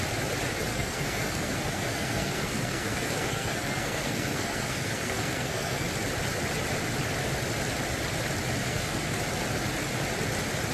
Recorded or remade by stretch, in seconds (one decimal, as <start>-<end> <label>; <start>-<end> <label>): 0.0-0.7 recorded; 0.7-5.9 remade; 5.9-8.6 recorded; 8.6-9.2 remade; 9.2-10.7 recorded